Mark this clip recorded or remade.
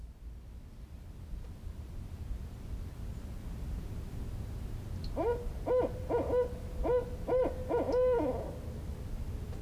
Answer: recorded